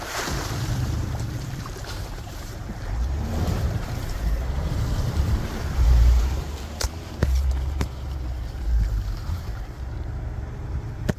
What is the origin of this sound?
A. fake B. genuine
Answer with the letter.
A